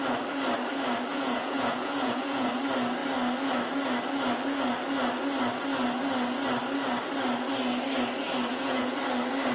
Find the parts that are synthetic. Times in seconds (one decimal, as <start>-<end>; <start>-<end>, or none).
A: 1.1-2.5; 8.5-9.0